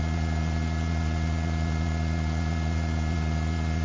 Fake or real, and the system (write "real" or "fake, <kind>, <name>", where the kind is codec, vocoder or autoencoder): real